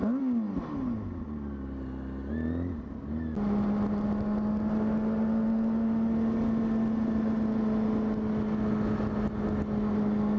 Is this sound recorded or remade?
recorded